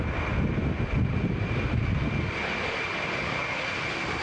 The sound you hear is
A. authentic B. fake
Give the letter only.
A